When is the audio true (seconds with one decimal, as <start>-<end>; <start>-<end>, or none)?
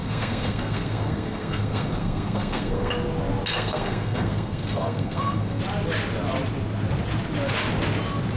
2.9-3.5; 5.6-8.4